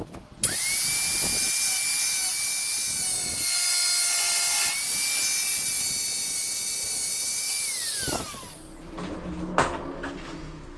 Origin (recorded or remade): recorded